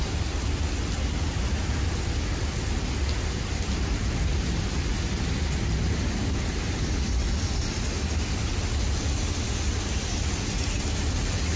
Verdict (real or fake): real